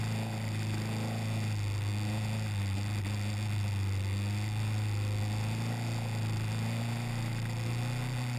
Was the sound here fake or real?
real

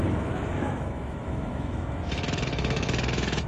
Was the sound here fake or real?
fake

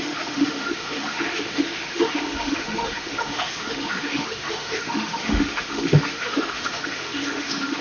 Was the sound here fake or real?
fake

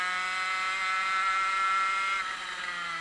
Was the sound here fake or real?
real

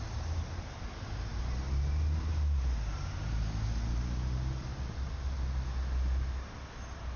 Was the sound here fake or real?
real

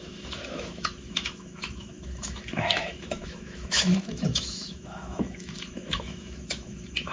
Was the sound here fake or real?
fake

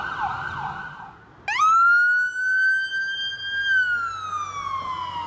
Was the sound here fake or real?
real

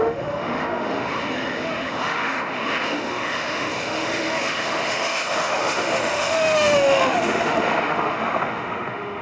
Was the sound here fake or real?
fake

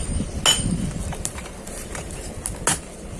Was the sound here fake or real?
real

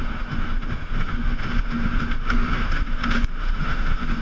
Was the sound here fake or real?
fake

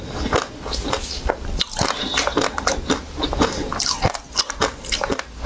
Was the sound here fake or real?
real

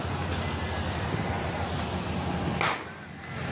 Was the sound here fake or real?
real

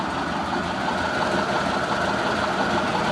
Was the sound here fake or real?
real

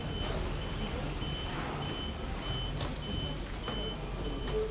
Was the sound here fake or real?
real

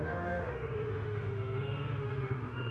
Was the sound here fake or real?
fake